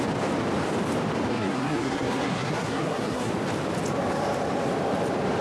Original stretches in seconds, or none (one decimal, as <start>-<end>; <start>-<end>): 0.0-1.3; 3.3-5.4